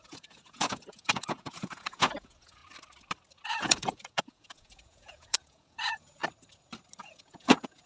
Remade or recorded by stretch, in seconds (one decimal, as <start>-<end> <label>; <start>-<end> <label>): 0.0-2.6 remade; 2.6-3.6 recorded; 3.6-6.2 remade; 6.2-7.0 recorded; 7.0-7.9 remade